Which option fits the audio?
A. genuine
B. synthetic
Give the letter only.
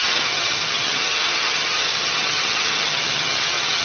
B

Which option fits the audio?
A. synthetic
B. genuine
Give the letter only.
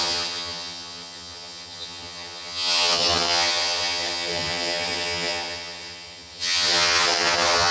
A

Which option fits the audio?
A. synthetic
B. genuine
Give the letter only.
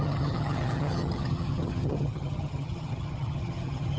A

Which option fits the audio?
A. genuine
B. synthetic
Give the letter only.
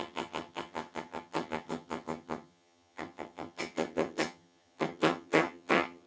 B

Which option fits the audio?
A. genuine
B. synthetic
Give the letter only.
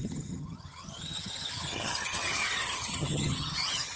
B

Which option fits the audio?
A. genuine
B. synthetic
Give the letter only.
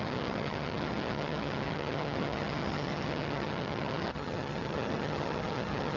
B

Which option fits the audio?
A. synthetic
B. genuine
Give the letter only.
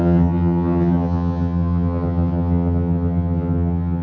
A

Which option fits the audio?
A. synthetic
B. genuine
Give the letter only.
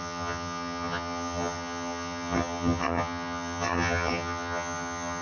A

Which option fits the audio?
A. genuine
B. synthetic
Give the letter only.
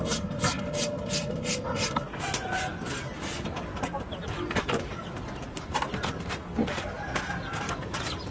A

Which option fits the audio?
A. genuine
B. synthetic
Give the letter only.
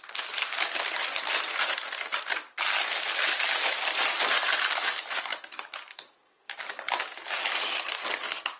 A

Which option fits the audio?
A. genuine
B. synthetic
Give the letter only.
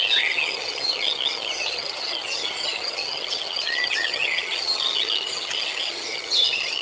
B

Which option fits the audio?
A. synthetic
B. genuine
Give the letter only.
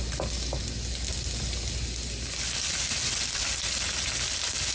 B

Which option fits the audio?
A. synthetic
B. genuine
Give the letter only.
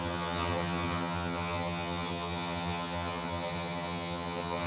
A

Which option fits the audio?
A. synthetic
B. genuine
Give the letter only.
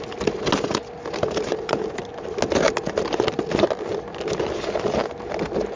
B